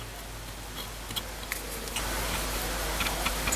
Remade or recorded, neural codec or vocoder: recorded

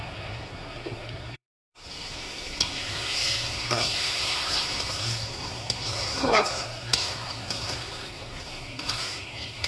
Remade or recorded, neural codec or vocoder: remade, codec, SNAC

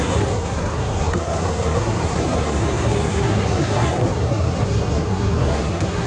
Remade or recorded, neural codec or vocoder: remade, codec, SNAC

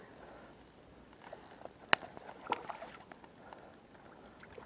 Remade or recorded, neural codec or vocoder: recorded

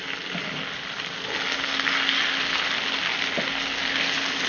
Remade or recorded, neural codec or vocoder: recorded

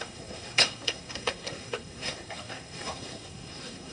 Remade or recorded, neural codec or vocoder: remade, codec, SNAC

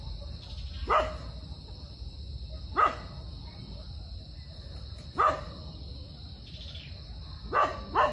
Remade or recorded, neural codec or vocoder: recorded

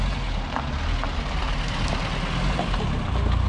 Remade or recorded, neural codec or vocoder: recorded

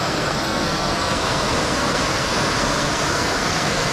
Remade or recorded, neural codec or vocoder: remade, codec, SNAC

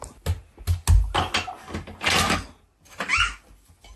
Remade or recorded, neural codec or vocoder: recorded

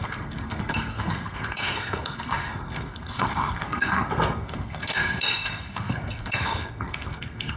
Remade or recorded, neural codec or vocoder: remade, codec, SNAC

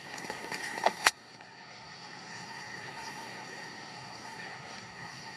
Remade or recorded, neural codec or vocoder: remade, codec, SNAC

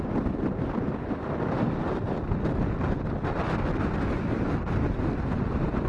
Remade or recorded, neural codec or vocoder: recorded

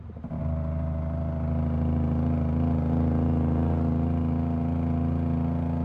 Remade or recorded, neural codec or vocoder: recorded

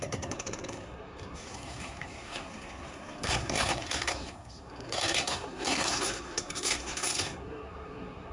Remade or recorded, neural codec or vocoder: remade, codec, SNAC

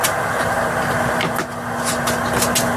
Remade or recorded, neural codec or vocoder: recorded